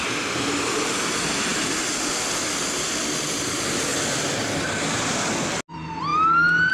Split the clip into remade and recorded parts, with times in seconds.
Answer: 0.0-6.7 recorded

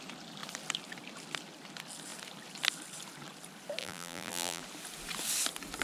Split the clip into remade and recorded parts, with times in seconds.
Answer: 0.0-3.8 recorded; 3.8-4.6 remade; 4.6-5.8 recorded

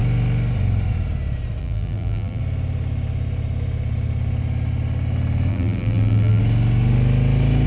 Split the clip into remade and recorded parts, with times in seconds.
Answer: 0.0-1.6 recorded; 1.6-2.4 remade; 2.4-5.5 recorded; 5.5-6.4 remade; 6.4-7.7 recorded

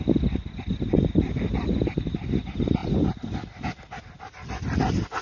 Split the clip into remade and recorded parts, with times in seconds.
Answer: 0.0-5.2 recorded

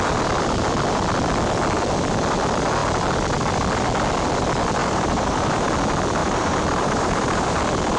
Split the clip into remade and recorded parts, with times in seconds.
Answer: 0.0-4.8 recorded; 4.8-5.7 remade; 5.7-6.2 recorded; 6.2-7.6 remade; 7.6-8.0 recorded

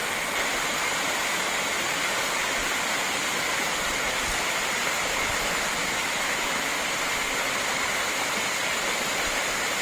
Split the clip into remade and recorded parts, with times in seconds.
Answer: 0.0-5.8 recorded; 5.8-6.7 remade; 6.7-9.8 recorded